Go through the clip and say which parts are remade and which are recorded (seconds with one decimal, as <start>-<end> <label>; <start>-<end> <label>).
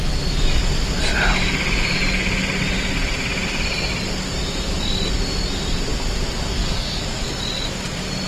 0.0-6.6 recorded; 6.6-7.4 remade; 7.4-8.3 recorded